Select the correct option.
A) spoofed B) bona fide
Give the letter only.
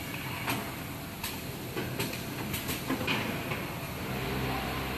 A